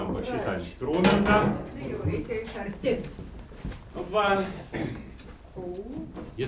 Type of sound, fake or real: real